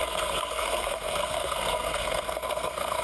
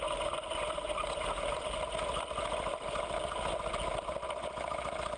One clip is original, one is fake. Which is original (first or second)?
second